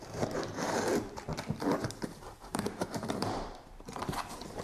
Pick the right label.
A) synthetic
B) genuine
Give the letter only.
A